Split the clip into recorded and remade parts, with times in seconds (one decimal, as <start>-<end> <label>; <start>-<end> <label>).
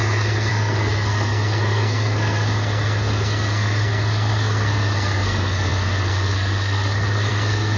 0.0-7.8 remade